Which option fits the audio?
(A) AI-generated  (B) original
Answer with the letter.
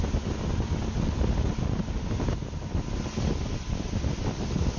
B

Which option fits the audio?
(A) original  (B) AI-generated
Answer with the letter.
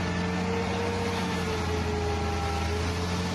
A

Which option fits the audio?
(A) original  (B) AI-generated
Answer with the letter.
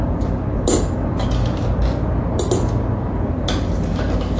A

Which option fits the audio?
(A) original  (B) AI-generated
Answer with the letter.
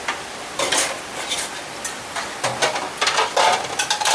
A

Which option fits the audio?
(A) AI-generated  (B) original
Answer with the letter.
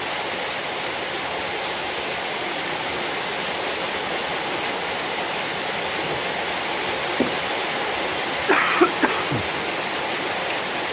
B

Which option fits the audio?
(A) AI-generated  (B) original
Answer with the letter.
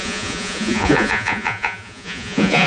A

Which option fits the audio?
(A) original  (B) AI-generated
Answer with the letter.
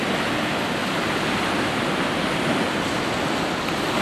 A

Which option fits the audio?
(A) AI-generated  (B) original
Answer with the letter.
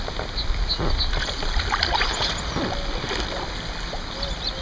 B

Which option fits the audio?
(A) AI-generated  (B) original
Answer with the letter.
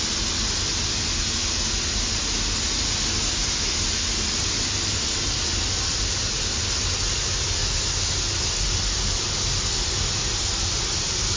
B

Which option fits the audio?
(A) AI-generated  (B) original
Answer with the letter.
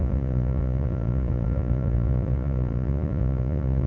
A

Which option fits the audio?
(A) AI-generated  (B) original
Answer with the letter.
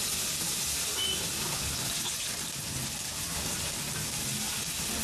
B